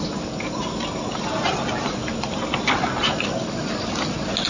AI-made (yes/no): no